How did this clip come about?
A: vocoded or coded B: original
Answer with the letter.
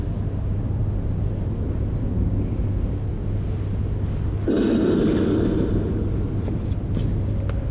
B